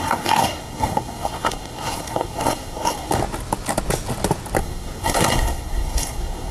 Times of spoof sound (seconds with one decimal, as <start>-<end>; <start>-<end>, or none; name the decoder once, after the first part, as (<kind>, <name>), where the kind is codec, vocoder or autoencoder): 0.0-3.2 (codec, SNAC); 4.6-6.5